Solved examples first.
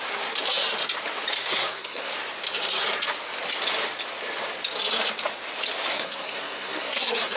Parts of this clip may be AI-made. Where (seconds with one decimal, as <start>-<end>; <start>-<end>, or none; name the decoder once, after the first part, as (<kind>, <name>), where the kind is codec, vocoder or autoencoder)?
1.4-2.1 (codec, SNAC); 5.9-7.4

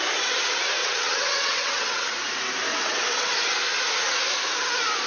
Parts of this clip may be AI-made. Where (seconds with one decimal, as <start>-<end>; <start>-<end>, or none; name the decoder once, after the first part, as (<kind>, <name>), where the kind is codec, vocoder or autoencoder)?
0.8-2.1 (vocoder, WaveNeXt); 2.7-3.3

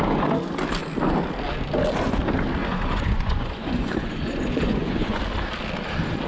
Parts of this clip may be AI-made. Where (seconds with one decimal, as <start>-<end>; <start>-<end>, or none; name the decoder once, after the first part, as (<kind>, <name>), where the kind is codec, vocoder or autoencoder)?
2.6-5.2 (vocoder, Vocos)

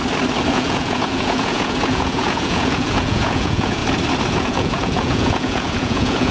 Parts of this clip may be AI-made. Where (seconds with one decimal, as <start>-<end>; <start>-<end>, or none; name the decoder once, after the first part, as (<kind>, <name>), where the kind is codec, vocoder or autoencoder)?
0.5-3.8 (vocoder, Vocos); 4.3-6.3

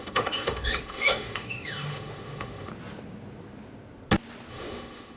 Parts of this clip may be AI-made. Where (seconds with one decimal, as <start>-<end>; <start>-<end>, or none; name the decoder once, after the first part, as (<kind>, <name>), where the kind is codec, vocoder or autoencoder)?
0.0-2.7 (autoencoder, DAC-VAE); 4.5-5.2